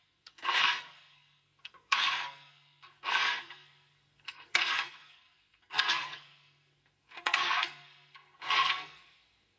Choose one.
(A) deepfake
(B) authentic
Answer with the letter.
A